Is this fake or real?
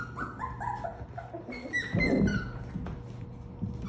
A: real